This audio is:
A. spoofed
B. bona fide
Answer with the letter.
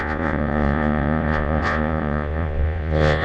A